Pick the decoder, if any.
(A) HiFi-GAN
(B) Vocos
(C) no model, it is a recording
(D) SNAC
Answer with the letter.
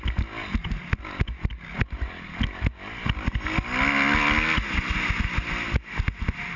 C